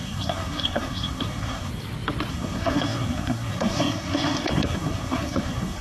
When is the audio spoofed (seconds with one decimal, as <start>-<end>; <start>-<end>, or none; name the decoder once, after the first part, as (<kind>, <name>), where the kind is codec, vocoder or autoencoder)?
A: 0.0-1.7 (codec, SNAC); 2.3-5.8